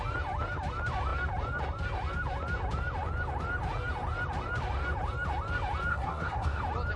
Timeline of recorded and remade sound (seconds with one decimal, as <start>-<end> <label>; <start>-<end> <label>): 0.0-5.9 recorded; 5.9-6.6 remade; 6.6-7.0 recorded